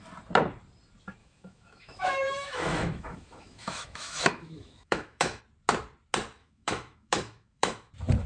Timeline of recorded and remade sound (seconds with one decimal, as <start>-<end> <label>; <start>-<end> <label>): 0.0-1.2 recorded; 1.2-5.4 remade; 5.4-6.4 recorded; 6.4-7.9 remade; 7.9-8.3 recorded